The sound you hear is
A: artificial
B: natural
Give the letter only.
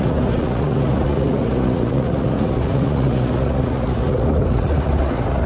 A